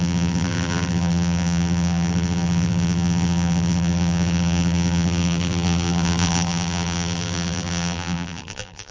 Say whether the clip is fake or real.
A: fake